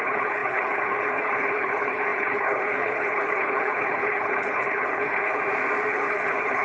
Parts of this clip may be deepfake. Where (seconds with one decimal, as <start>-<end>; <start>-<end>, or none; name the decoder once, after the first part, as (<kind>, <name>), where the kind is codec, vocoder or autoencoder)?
0.0-5.4 (codec, HILCodec); 5.9-6.6